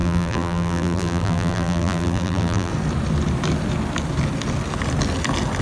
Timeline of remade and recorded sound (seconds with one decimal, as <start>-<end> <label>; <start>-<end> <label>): 0.0-2.7 remade; 2.7-5.6 recorded